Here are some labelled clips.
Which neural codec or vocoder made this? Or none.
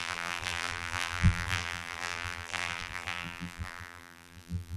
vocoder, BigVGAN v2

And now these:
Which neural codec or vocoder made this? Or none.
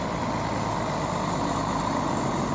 none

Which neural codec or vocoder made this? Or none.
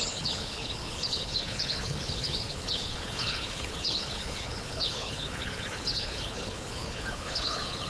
codec, HILCodec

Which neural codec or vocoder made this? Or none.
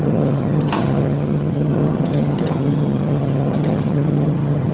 vocoder, HiFi-GAN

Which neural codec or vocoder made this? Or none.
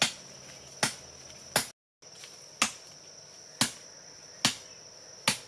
none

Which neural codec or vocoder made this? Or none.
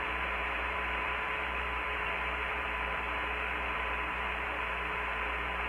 vocoder, BigVGAN v2